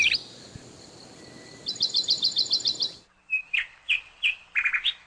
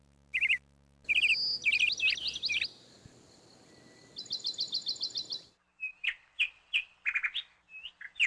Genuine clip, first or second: second